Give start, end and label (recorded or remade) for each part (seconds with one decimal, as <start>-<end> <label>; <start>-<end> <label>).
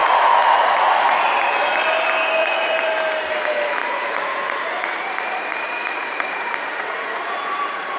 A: 0.0-1.2 remade; 1.2-2.4 recorded; 2.4-2.9 remade; 2.9-3.8 recorded; 3.8-8.0 remade